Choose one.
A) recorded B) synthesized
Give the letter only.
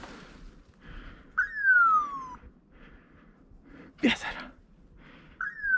A